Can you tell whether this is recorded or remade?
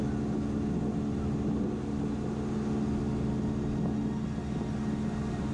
recorded